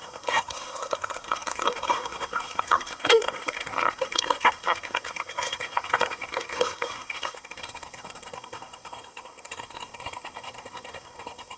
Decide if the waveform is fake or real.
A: fake